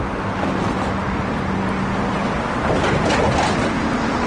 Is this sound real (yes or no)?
yes